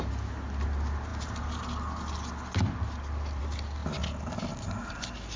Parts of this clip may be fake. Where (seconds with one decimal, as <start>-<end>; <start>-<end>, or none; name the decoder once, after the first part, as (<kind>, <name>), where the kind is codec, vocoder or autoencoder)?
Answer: none